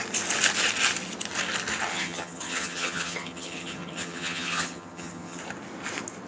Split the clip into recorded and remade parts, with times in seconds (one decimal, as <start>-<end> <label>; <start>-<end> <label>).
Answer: 0.0-1.9 recorded; 1.9-5.4 remade; 5.4-6.3 recorded